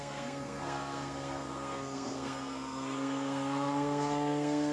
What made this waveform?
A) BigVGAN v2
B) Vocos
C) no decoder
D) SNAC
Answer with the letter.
D